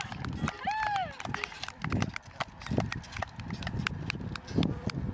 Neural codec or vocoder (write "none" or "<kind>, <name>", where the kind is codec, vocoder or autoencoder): none